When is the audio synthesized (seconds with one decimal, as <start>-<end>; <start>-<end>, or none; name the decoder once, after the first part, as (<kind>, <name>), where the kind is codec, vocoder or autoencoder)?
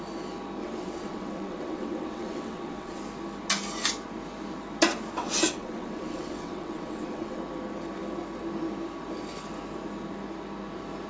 0.6-3.0 (vocoder, WaveNeXt); 5.2-7.4